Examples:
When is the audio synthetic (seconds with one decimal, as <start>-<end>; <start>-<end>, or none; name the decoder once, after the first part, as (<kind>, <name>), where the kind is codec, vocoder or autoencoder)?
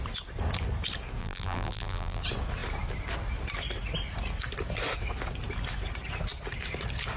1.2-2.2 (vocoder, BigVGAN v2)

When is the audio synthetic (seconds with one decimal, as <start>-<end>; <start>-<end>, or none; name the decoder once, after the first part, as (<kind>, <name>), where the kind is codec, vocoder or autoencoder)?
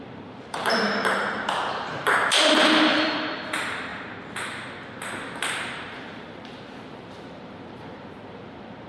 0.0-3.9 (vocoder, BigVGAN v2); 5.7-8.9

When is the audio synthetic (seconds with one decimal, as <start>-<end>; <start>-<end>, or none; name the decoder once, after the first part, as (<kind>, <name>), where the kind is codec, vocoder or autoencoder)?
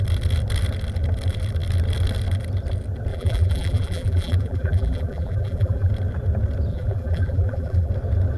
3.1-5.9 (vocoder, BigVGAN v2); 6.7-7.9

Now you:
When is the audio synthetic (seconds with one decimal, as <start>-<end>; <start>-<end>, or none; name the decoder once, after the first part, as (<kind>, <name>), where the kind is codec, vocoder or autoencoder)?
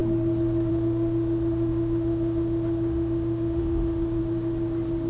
0.7-4.2 (autoencoder, DAC-VAE)